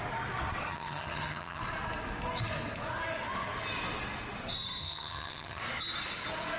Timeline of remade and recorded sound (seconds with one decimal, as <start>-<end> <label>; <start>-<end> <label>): 0.0-0.7 recorded; 0.7-1.6 remade; 1.6-4.8 recorded; 4.8-5.6 remade; 5.6-6.6 recorded

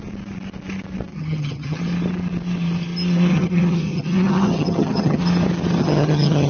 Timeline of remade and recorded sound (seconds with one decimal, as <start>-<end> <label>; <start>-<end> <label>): 0.0-1.1 recorded; 1.1-1.8 remade; 1.8-3.3 recorded; 3.3-5.2 remade; 5.2-5.8 recorded; 5.8-6.5 remade

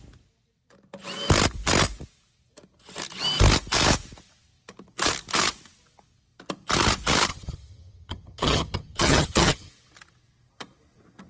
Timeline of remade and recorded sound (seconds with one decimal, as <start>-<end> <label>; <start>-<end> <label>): 0.0-7.3 recorded; 7.3-9.7 remade; 9.7-11.3 recorded